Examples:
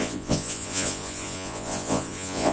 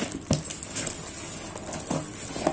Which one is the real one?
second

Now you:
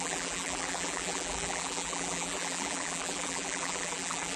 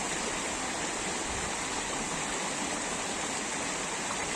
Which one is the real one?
second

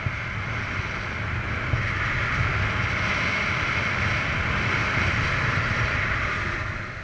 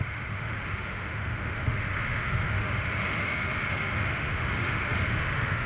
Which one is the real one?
first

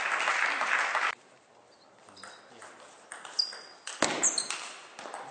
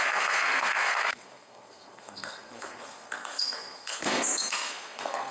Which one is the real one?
first